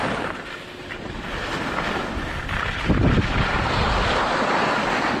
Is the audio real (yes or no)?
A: yes